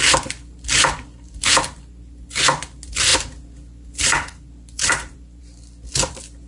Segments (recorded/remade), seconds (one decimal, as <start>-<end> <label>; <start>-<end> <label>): 0.0-6.5 recorded